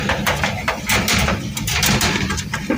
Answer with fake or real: real